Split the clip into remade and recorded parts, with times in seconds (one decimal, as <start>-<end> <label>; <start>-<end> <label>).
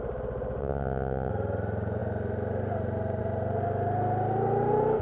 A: 0.0-0.6 recorded; 0.6-1.3 remade; 1.3-5.0 recorded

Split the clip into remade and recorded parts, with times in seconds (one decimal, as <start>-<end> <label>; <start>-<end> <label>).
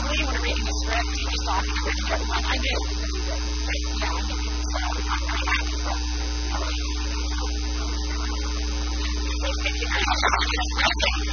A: 0.0-11.3 recorded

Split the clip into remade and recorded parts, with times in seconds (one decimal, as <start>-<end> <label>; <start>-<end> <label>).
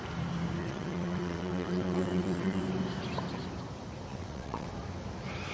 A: 0.0-0.6 recorded; 0.6-2.6 remade; 2.6-4.1 recorded; 4.1-4.7 remade; 4.7-5.5 recorded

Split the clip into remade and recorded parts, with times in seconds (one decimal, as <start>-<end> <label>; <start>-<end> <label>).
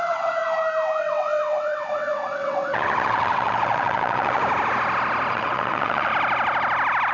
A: 0.0-0.4 remade; 0.4-1.0 recorded; 1.0-4.4 remade; 4.4-5.3 recorded; 5.3-6.1 remade; 6.1-7.1 recorded